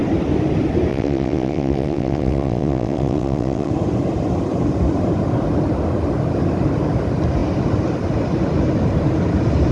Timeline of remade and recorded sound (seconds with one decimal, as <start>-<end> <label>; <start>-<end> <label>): 0.0-0.9 recorded; 0.9-3.7 remade; 3.7-9.7 recorded